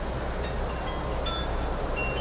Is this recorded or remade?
recorded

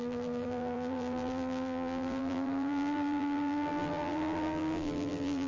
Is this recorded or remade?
remade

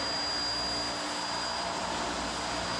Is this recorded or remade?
recorded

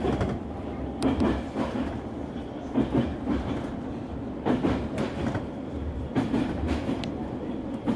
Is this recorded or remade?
remade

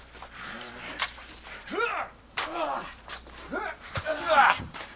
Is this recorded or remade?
remade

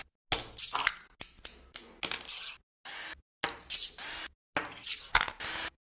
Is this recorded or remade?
recorded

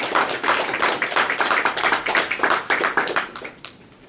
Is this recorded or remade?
remade